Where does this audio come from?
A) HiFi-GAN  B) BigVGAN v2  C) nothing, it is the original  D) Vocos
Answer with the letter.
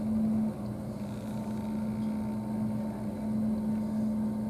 C